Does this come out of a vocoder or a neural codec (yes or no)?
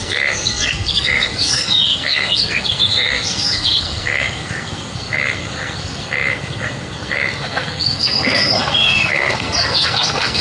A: yes